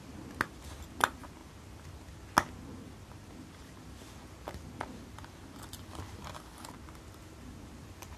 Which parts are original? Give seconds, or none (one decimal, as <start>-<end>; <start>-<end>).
0.0-8.2